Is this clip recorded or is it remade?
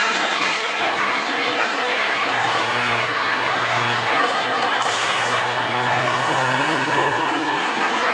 remade